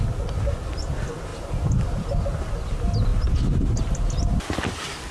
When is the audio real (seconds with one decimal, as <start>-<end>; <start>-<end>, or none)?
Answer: 0.0-5.1